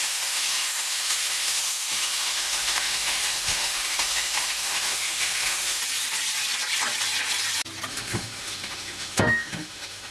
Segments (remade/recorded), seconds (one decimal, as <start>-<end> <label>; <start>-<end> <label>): 0.0-5.8 remade; 5.8-7.9 recorded; 7.9-10.1 remade

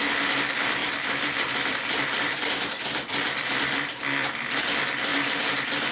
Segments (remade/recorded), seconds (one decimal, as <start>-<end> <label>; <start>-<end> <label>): 0.0-0.8 recorded; 0.8-4.3 remade; 4.3-5.9 recorded

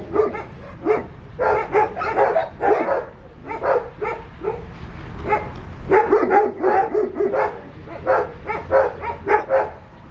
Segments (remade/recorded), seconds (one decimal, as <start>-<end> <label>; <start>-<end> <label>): 0.0-10.1 recorded

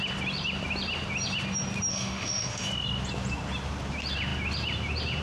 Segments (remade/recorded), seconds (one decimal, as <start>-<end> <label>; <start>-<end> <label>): 0.0-1.9 recorded; 1.9-2.7 remade; 2.7-5.2 recorded

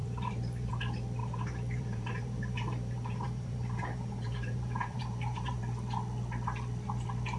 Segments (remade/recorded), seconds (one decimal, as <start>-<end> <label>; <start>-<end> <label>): 0.0-0.7 remade; 0.7-1.2 recorded; 1.2-5.6 remade; 5.6-7.4 recorded